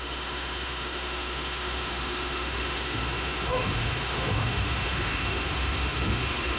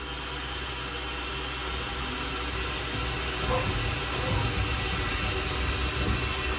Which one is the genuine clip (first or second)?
second